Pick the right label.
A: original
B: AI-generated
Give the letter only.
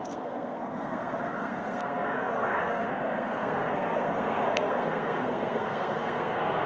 B